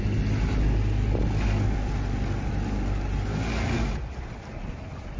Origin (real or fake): real